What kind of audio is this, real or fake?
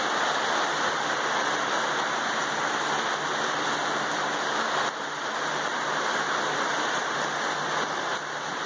real